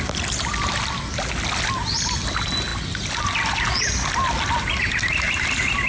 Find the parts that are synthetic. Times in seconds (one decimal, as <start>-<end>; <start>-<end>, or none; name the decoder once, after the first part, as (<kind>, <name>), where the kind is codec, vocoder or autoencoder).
none